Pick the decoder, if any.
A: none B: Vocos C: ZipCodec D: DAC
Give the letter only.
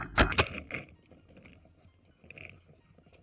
A